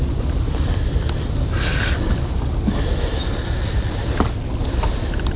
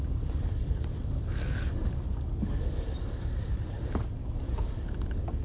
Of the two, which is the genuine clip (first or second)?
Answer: first